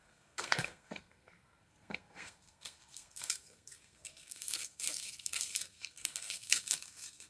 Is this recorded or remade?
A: remade